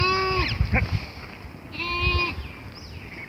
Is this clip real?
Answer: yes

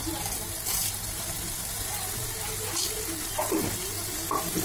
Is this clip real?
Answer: yes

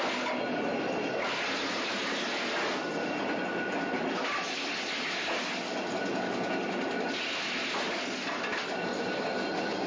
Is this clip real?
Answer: yes